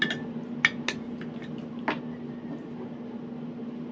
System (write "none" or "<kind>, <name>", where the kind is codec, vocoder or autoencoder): none